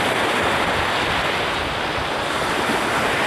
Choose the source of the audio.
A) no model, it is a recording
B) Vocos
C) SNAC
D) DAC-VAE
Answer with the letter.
A